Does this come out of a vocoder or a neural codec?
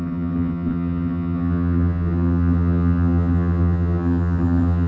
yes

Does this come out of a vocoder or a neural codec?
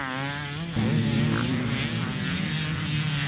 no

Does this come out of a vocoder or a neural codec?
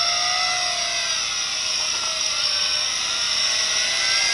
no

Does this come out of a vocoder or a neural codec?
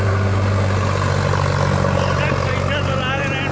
no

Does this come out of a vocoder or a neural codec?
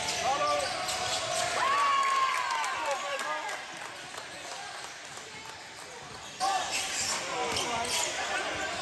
no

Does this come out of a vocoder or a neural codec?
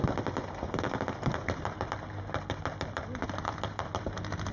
no